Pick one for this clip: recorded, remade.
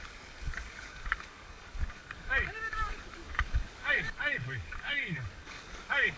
remade